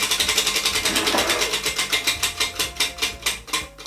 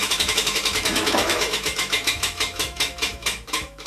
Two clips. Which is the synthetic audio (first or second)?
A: second